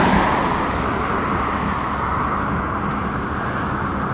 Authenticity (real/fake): real